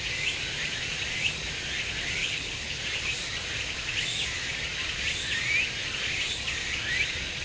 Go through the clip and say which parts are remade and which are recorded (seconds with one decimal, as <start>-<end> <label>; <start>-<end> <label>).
0.0-2.2 recorded; 2.2-2.8 remade; 2.8-7.4 recorded